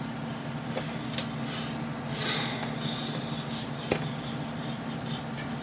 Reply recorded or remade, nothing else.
recorded